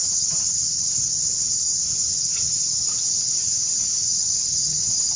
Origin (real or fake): fake